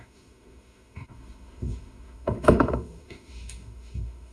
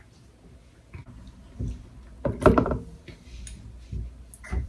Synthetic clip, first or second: first